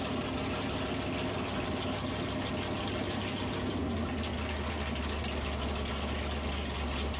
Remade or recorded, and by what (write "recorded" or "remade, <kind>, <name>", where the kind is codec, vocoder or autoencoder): recorded